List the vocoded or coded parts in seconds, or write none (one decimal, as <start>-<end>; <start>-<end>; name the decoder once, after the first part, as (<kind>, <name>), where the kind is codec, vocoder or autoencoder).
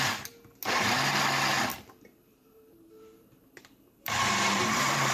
1.7-5.1 (vocoder, BigVGAN v2)